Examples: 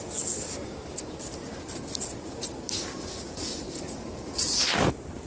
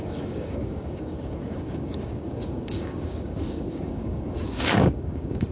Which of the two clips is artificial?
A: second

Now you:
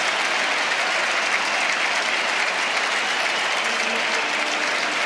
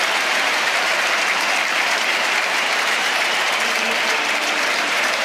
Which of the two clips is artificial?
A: second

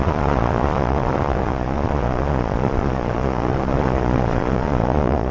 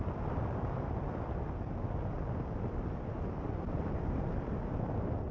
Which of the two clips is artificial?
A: first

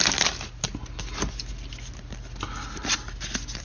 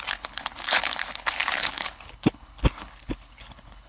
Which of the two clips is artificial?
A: second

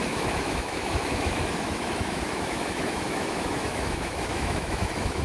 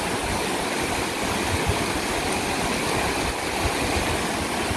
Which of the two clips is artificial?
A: first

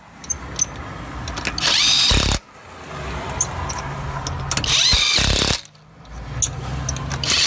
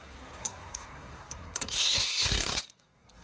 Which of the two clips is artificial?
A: second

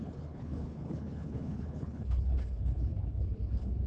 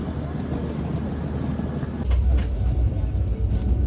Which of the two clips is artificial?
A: first